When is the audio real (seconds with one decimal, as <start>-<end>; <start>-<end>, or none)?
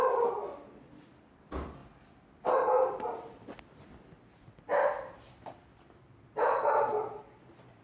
0.0-7.8